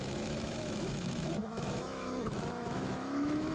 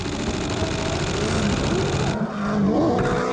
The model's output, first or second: first